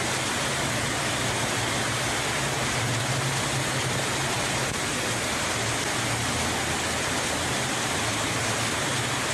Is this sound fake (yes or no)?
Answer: no